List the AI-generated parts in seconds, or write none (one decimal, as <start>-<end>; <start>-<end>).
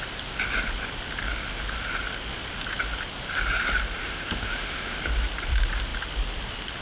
4.0-5.0